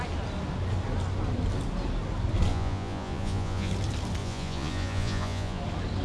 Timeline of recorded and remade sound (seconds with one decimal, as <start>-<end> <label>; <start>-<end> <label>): 0.0-2.5 recorded; 2.5-3.7 remade; 3.7-4.2 recorded; 4.2-5.6 remade; 5.6-6.0 recorded